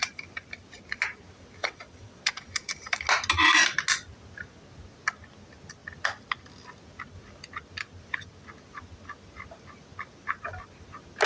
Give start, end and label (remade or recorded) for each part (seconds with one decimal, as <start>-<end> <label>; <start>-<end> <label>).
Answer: 0.0-1.6 recorded; 1.6-2.2 remade; 2.2-11.3 recorded